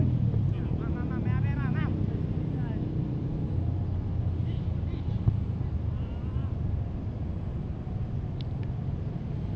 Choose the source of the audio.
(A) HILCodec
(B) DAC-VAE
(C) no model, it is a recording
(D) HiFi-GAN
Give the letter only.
C